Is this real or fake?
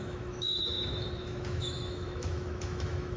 fake